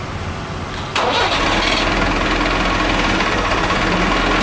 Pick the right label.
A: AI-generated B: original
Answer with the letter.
B